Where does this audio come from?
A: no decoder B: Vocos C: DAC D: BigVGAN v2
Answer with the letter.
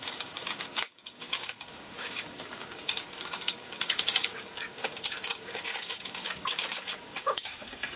C